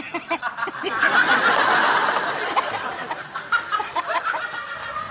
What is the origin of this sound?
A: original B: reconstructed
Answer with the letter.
A